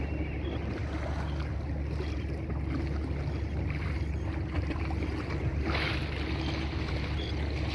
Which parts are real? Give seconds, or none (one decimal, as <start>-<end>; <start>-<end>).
0.0-7.7